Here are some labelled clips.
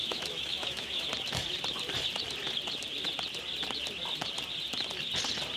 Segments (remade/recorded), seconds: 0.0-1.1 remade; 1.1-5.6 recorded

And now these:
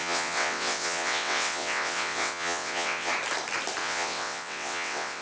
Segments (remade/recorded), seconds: 0.0-3.1 remade; 3.1-3.8 recorded; 3.8-5.2 remade

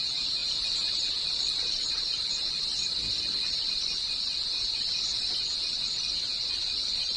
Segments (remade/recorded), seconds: 0.0-7.2 recorded

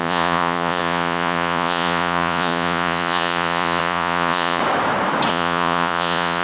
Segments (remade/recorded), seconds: 0.0-4.6 remade; 4.6-5.3 recorded; 5.3-6.4 remade

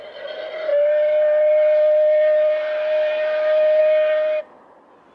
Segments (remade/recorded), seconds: 0.0-5.1 recorded

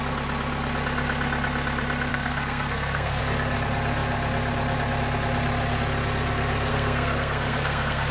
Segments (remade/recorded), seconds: 0.0-2.1 recorded; 2.1-3.2 remade; 3.2-6.7 recorded; 6.7-8.1 remade